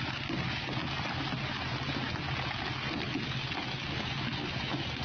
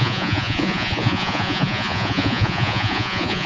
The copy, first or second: second